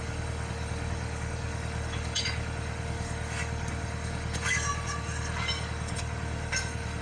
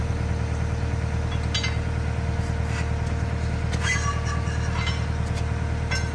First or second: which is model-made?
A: first